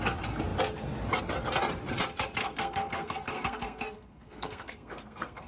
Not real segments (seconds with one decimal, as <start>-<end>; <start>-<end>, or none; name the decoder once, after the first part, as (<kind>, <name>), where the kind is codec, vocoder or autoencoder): 2.4-5.5 (codec, SNAC)